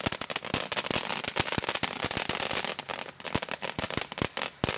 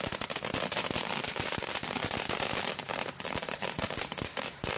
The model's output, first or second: second